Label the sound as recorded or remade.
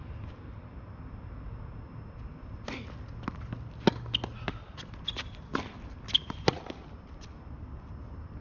recorded